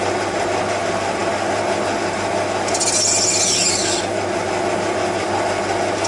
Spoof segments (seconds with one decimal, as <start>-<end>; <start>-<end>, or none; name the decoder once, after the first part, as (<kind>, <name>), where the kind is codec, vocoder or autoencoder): none